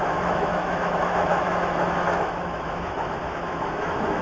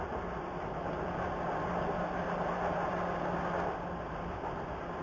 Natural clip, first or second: second